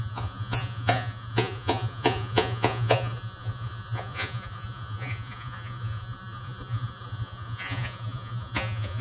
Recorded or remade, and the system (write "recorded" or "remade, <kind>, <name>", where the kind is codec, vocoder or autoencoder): remade, vocoder, Vocos